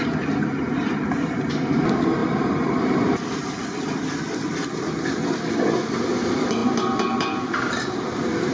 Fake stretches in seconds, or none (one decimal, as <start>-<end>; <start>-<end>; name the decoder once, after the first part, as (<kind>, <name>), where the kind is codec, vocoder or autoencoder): 2.2-3.2 (vocoder, BigVGAN v2)

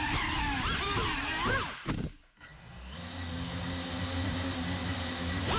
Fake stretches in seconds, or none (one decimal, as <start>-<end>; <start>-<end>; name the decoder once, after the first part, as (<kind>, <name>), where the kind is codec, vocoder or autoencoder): none

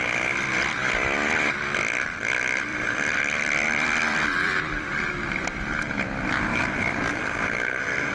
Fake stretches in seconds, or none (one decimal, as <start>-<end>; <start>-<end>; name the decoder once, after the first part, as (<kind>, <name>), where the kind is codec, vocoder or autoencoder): 0.8-1.5 (vocoder, BigVGAN v2); 2.7-5.1